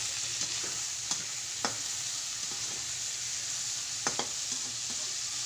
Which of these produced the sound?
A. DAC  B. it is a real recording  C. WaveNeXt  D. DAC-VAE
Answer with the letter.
B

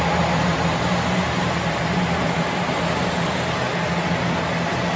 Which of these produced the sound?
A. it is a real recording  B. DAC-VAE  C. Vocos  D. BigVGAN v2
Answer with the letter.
A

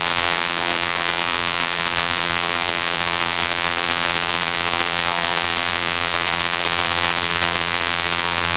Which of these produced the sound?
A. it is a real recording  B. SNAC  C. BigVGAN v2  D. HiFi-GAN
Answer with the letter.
C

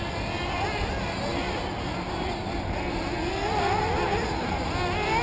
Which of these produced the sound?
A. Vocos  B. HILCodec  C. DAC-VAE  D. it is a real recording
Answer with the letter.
D